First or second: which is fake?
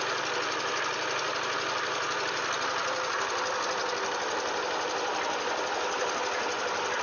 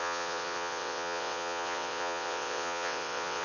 second